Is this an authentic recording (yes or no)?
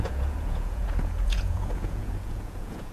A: no